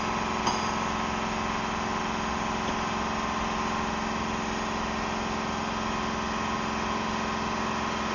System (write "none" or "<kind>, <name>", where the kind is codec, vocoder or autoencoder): none